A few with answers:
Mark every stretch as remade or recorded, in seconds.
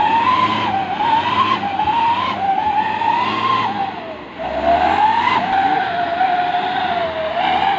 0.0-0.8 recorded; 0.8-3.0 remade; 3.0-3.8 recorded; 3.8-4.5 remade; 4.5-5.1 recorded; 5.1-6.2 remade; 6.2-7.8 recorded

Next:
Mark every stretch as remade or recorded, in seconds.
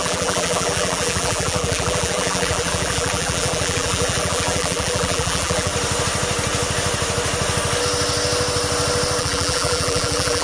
0.0-5.7 remade; 5.7-9.2 recorded; 9.2-10.4 remade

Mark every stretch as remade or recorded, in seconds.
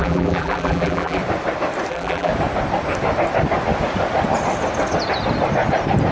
0.0-1.2 remade; 1.2-1.9 recorded; 1.9-2.3 remade; 2.3-6.1 recorded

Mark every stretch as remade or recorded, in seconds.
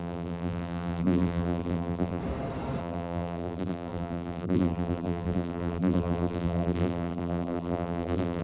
0.0-2.2 remade; 2.2-2.8 recorded; 2.8-8.4 remade